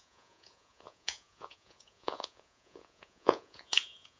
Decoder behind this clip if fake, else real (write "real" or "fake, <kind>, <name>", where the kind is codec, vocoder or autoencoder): fake, vocoder, Vocos